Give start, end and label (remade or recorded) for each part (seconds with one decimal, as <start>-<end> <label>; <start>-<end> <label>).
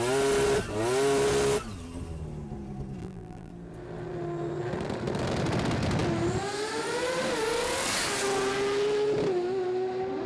0.0-3.0 recorded; 3.0-3.5 remade; 3.5-10.3 recorded